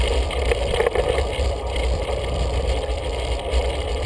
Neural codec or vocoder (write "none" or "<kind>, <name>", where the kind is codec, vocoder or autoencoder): vocoder, BigVGAN v2